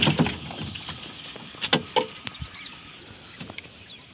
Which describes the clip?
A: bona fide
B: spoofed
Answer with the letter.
A